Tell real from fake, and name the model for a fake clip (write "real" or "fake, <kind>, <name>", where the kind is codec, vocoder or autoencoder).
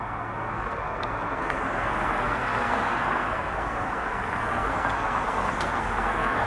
fake, codec, SNAC